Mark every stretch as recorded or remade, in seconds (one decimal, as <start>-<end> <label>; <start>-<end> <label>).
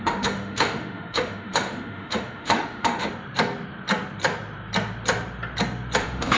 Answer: 0.0-3.1 remade; 3.1-6.0 recorded; 6.0-6.4 remade